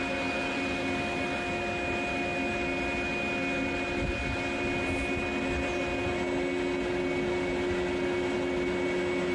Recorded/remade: recorded